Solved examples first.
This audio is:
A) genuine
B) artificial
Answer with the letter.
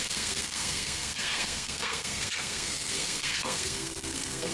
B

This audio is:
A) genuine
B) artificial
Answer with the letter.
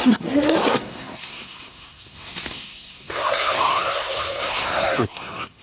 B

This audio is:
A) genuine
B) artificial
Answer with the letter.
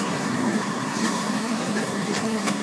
B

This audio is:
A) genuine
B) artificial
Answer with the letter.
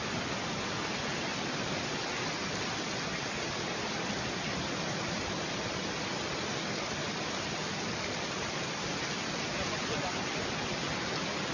A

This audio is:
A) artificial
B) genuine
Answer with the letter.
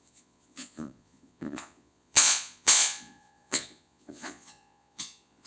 A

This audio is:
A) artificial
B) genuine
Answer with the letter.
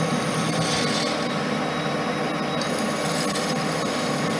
B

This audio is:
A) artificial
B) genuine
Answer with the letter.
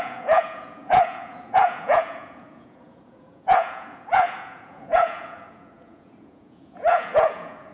A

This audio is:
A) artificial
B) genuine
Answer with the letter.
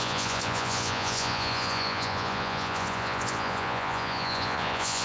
A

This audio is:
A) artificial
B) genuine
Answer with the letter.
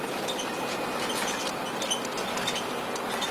B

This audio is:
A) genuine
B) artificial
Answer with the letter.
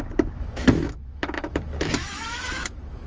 B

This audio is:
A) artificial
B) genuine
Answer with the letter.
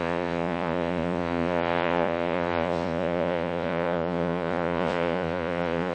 A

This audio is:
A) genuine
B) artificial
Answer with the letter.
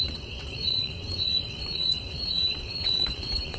B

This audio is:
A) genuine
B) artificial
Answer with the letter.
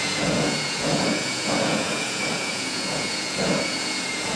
B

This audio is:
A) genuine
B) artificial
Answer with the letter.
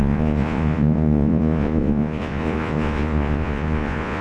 B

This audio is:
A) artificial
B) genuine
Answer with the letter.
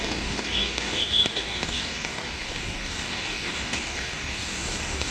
A